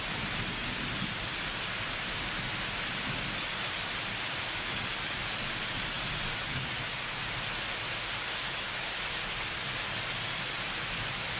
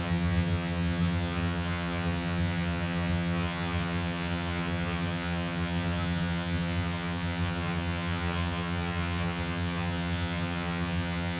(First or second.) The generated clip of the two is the second